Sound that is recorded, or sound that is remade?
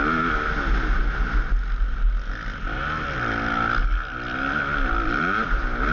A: recorded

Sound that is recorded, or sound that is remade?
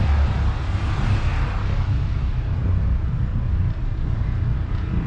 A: recorded